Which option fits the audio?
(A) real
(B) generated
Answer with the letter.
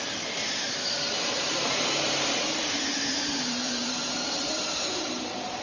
B